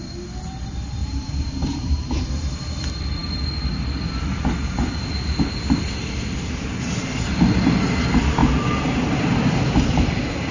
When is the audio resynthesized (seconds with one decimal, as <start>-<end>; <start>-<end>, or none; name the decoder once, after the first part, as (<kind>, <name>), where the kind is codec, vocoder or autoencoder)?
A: 1.0-2.2 (vocoder, BigVGAN v2)